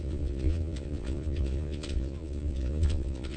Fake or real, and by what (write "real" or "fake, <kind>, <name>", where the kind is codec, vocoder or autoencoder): fake, vocoder, Vocos